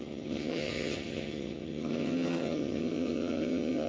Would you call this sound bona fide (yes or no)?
no